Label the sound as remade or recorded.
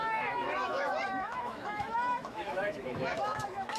remade